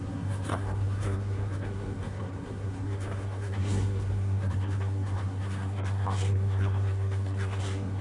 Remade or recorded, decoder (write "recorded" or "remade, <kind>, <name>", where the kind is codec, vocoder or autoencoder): remade, codec, SNAC